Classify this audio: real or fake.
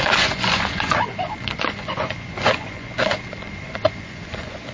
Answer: fake